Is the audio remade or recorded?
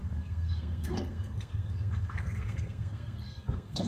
remade